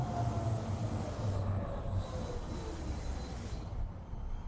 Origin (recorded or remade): recorded